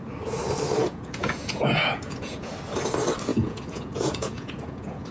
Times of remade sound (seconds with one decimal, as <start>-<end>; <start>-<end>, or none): 0.8-2.5; 3.3-5.1